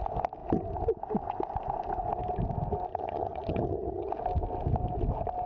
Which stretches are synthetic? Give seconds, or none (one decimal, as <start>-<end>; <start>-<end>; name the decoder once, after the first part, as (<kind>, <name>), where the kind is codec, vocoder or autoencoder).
2.9-4.1 (vocoder, HiFi-GAN)